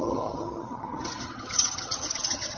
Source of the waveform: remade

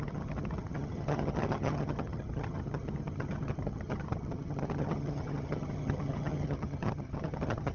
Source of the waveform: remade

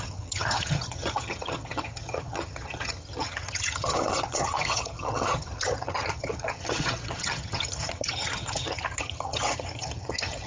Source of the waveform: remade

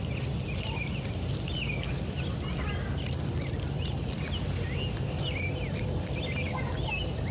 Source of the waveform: recorded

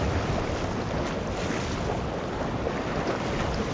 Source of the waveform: recorded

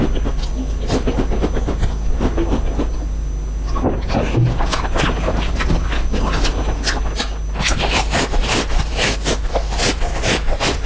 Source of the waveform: recorded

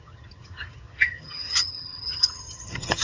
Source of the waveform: remade